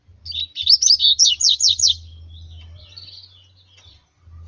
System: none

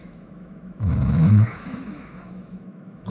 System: autoencoder, DAC-VAE